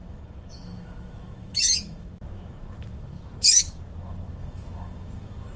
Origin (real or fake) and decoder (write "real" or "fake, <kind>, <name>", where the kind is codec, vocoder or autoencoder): fake, autoencoder, DAC-VAE